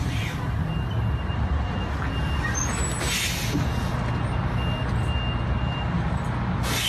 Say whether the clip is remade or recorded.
recorded